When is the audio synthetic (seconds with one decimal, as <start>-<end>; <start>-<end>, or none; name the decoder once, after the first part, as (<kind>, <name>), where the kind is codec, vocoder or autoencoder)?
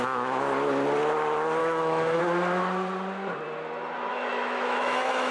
1.6-2.2 (autoencoder, DAC-VAE); 4.1-5.3